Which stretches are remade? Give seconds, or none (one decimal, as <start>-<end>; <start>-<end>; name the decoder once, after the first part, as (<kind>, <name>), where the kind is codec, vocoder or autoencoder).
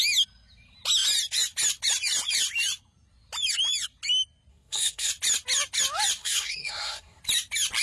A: 4.5-5.1 (codec, SNAC); 6.2-7.2